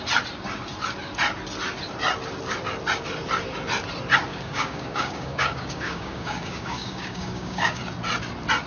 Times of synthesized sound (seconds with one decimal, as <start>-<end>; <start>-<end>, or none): 4.3-7.8